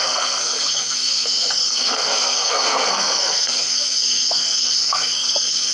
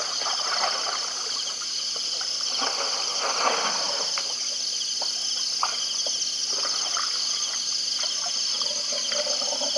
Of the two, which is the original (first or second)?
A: second